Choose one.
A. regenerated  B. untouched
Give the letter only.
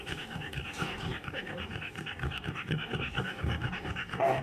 A